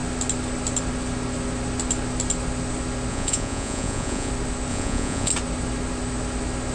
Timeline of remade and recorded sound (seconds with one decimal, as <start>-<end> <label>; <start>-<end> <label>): 0.0-3.1 recorded; 3.1-4.3 remade; 4.3-4.7 recorded; 4.7-5.3 remade; 5.3-6.7 recorded